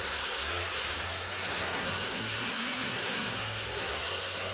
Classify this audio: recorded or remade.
remade